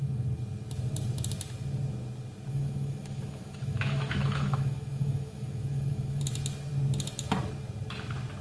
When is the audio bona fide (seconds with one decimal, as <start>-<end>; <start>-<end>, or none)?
0.0-2.5; 6.2-8.4